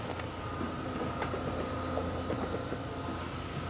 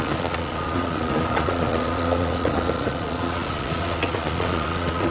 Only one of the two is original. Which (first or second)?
first